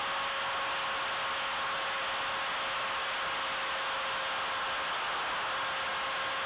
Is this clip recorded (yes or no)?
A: yes